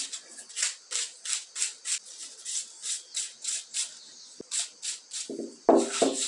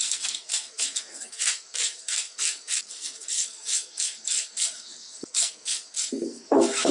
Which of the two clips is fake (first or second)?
second